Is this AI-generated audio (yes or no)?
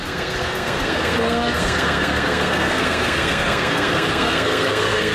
yes